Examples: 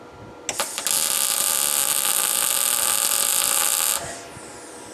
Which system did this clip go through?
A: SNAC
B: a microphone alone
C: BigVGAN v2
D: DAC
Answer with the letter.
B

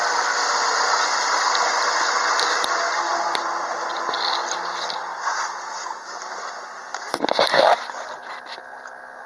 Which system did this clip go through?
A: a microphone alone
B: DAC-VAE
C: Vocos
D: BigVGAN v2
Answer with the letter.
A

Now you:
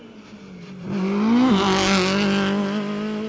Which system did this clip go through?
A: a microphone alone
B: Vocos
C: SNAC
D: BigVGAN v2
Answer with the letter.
A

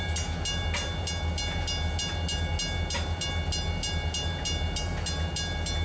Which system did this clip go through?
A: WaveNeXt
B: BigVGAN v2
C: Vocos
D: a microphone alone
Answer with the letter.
D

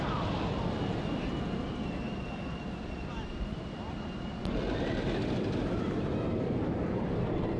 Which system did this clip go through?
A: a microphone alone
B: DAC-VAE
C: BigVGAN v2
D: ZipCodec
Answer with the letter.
C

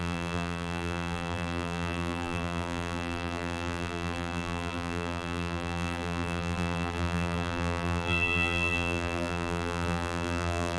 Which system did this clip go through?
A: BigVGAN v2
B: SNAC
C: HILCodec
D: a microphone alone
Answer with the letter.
A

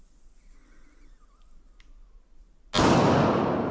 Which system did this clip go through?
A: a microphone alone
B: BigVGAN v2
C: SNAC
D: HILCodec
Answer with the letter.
A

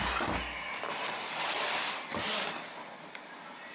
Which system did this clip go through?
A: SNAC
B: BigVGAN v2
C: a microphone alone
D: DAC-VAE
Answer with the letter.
C